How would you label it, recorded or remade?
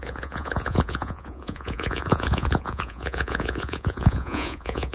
remade